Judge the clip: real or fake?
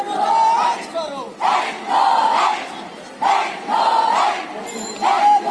real